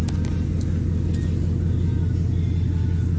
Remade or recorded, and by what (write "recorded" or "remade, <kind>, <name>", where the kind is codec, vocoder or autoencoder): recorded